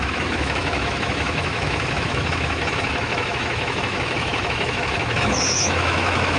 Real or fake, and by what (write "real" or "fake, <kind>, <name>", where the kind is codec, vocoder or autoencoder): fake, autoencoder, DAC-VAE